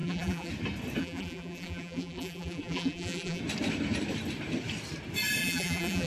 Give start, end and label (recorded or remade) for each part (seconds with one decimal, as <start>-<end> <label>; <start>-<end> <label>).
0.0-0.5 remade; 0.5-1.0 recorded; 1.0-3.4 remade; 3.4-5.4 recorded; 5.4-6.1 remade